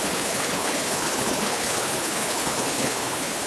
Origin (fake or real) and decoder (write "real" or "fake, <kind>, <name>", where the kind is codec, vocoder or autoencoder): fake, codec, HILCodec